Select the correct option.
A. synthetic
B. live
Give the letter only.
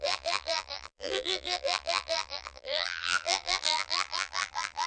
A